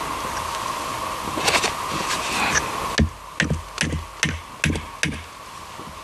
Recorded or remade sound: recorded